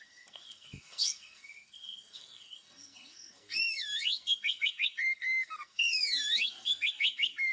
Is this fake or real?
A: fake